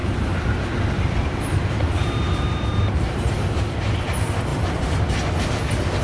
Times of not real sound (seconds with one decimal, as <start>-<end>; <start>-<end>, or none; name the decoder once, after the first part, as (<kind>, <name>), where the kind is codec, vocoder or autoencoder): 0.0-3.6 (vocoder, BigVGAN v2); 4.5-5.0

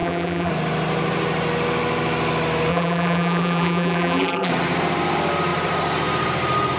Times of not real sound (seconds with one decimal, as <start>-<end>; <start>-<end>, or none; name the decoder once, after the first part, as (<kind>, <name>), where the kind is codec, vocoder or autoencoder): 0.0-0.5 (vocoder, BigVGAN v2); 2.7-4.5

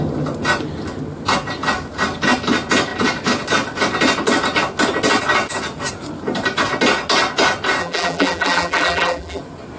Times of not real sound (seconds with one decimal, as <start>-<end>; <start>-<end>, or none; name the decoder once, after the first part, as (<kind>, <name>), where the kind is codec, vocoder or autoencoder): 7.8-9.4 (vocoder, BigVGAN v2)

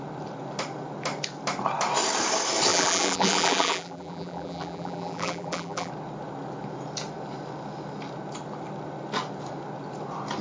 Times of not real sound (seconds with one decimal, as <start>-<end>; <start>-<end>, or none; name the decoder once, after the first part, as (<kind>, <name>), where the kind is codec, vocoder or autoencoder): 2.7-5.9 (vocoder, BigVGAN v2)